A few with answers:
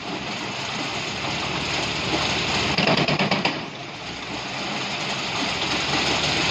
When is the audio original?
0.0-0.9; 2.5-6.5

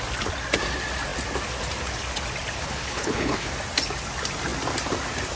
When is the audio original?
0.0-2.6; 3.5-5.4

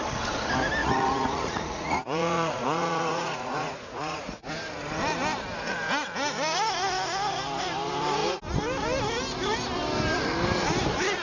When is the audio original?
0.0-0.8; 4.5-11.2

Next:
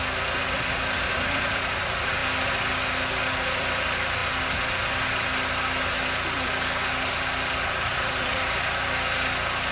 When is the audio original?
2.2-3.6; 4.2-7.8

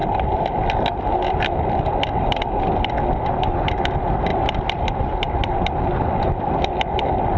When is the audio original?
0.0-7.4

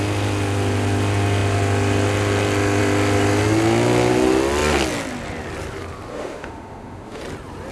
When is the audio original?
0.0-6.1; 7.2-7.7